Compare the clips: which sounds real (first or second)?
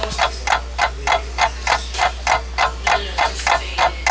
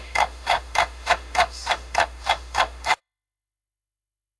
first